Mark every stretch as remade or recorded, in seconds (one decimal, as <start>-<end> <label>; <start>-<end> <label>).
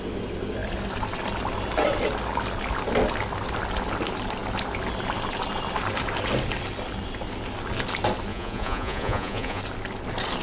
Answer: 0.0-8.3 recorded; 8.3-9.6 remade; 9.6-10.4 recorded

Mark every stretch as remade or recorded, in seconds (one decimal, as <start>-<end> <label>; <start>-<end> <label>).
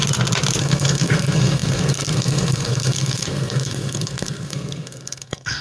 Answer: 0.0-0.6 recorded; 0.6-5.6 remade